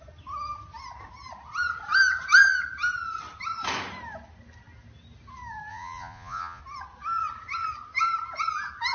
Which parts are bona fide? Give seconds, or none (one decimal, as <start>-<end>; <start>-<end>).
0.0-5.7; 6.6-8.9